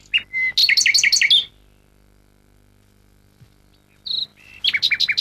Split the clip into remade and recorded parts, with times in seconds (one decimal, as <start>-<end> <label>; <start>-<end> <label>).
0.0-5.2 recorded